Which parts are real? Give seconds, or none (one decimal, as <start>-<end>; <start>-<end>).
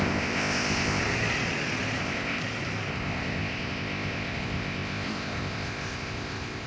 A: 1.0-2.0; 2.4-2.9